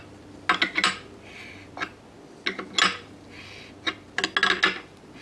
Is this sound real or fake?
real